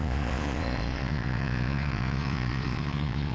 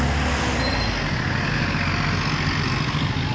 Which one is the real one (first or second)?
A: second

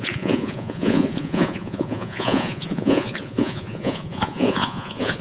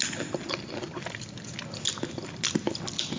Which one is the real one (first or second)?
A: second